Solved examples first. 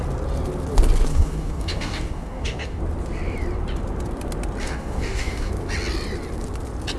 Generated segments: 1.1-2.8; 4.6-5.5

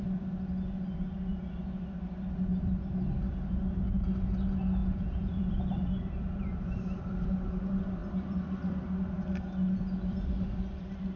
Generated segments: 4.8-5.5

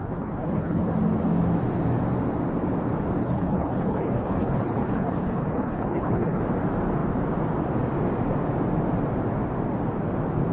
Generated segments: 0.0-0.9; 3.2-6.4

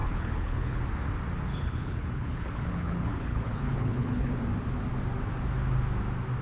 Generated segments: 0.0-0.8; 1.5-4.3